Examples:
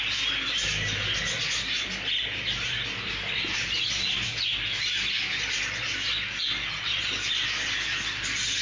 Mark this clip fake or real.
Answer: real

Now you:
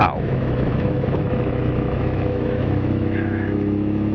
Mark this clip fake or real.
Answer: fake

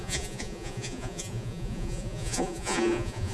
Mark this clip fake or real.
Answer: fake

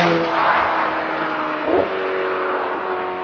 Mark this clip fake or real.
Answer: real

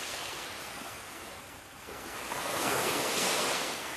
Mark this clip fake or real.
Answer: fake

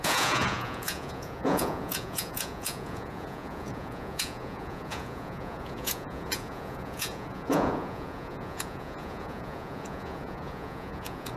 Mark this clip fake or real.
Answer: fake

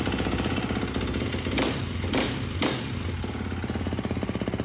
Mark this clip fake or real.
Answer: real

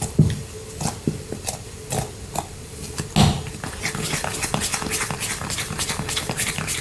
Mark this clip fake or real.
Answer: real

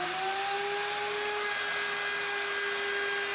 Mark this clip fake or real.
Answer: real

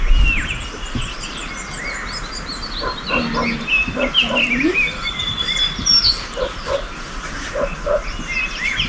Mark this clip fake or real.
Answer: real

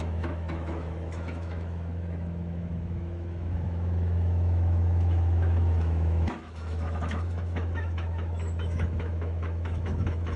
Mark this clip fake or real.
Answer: fake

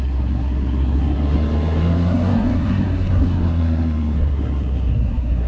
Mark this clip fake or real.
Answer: fake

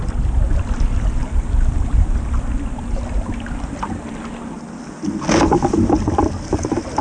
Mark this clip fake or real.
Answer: real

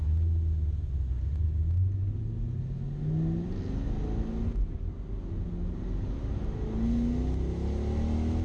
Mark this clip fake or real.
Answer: real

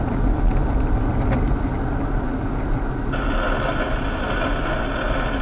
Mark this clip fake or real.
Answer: real